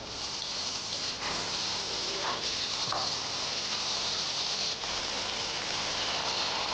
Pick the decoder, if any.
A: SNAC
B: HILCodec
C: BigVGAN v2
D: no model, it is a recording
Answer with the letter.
D